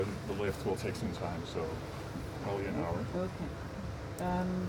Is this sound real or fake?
real